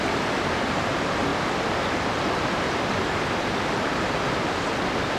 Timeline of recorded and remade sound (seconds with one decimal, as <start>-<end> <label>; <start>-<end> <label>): 0.0-1.3 remade; 1.3-2.0 recorded; 2.0-5.2 remade